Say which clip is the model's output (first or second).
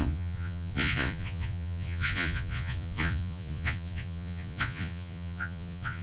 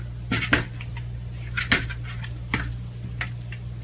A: first